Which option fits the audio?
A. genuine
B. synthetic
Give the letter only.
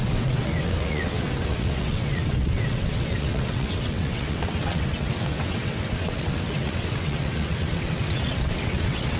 B